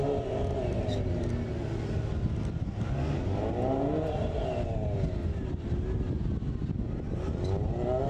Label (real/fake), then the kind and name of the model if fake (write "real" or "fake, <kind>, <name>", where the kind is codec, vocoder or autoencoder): real